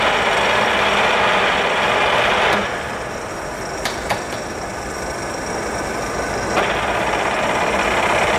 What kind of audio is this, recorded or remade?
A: recorded